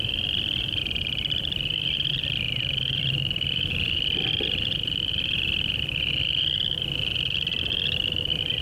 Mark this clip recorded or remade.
remade